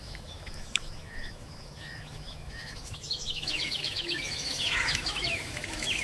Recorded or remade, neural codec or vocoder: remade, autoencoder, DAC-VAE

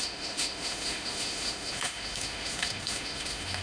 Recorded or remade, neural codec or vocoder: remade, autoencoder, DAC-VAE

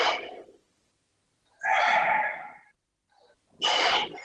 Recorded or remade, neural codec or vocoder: recorded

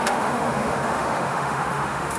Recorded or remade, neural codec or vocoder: remade, autoencoder, DAC-VAE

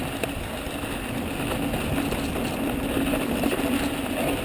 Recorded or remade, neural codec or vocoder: recorded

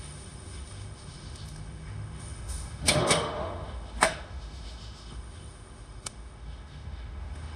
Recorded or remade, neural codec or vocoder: remade, autoencoder, DAC-VAE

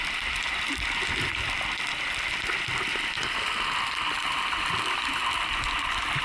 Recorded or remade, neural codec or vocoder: recorded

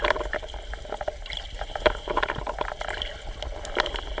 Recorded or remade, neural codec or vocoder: recorded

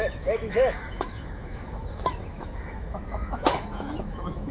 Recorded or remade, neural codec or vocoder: remade, autoencoder, DAC-VAE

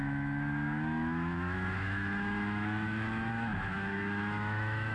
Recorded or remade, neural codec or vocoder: remade, autoencoder, DAC-VAE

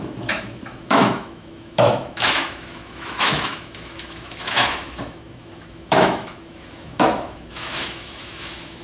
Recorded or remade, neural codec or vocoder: remade, autoencoder, DAC-VAE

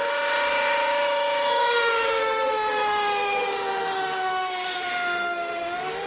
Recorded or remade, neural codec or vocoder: remade, autoencoder, DAC-VAE